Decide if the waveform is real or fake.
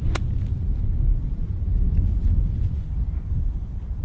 real